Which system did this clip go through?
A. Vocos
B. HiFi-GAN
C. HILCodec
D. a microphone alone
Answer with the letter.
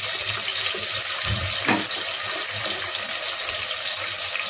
D